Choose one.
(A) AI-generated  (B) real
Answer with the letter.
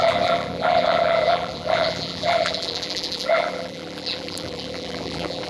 A